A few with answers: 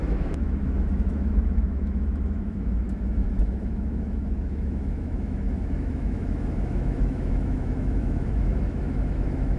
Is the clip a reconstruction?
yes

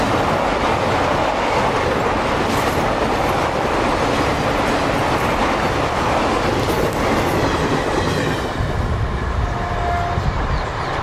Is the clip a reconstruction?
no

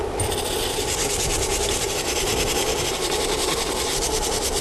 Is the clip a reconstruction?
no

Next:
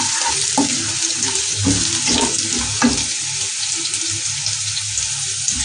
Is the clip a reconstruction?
no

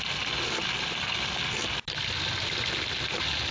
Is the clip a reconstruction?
no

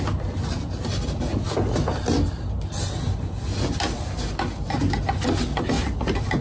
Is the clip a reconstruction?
no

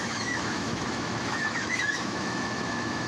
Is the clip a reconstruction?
yes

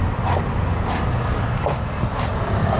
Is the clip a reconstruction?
no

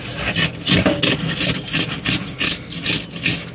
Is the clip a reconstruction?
no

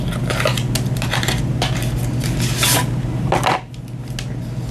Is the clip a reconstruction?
no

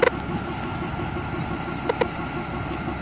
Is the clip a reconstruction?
no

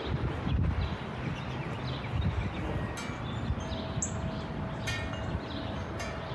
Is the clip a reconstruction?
no